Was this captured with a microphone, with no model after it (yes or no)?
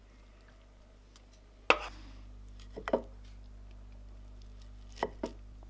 yes